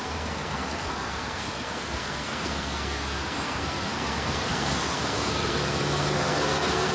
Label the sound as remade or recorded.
remade